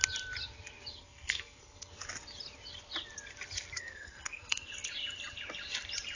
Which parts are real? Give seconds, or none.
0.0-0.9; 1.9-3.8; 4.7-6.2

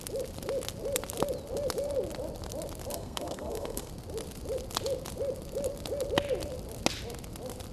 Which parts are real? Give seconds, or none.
0.0-2.9; 3.9-7.7